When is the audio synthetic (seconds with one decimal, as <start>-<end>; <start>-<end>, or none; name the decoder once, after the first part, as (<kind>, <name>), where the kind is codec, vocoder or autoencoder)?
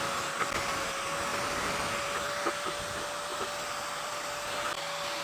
1.3-2.5 (vocoder, BigVGAN v2); 3.3-4.8